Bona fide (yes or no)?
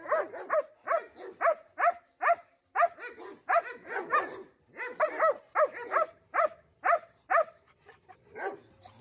yes